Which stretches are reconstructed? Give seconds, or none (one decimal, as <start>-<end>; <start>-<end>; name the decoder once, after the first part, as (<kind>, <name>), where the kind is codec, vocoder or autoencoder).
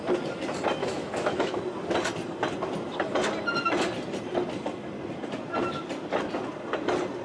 0.8-1.6 (autoencoder, DAC-VAE)